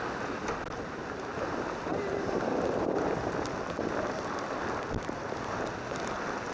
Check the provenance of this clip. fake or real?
real